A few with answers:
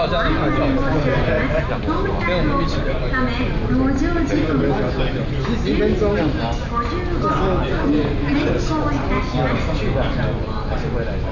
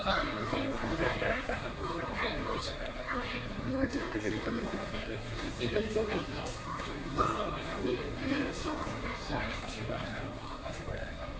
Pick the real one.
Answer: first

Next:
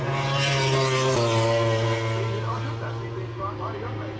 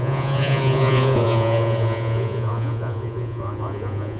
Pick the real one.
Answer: first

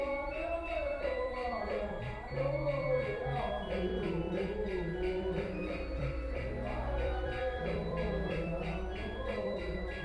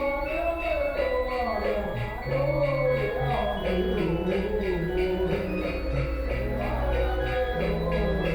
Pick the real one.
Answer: second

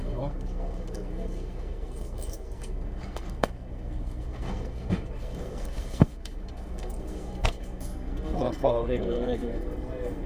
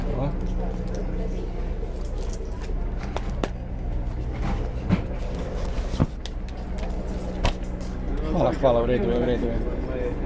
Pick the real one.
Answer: second